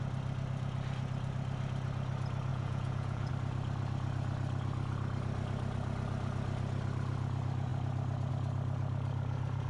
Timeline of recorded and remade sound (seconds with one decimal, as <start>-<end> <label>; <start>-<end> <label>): 0.0-2.5 recorded; 2.5-3.3 remade; 3.3-9.7 recorded

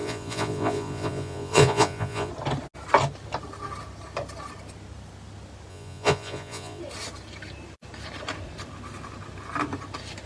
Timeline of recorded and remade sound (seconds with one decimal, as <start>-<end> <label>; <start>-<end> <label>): 0.0-2.3 remade; 2.3-5.7 recorded; 5.7-6.8 remade; 6.8-10.3 recorded